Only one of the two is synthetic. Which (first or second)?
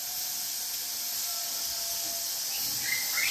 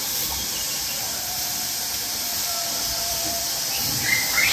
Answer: second